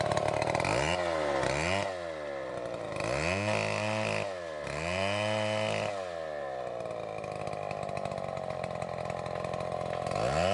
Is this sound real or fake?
real